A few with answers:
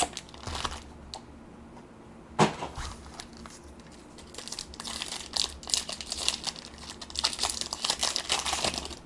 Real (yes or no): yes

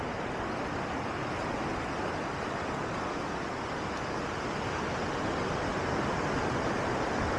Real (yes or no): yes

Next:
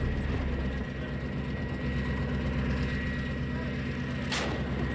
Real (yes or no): yes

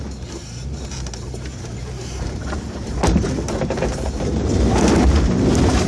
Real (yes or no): no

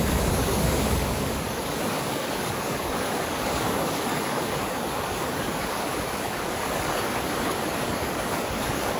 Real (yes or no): no